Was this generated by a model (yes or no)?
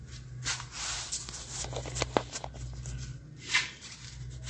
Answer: no